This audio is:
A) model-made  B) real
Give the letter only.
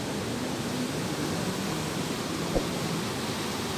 B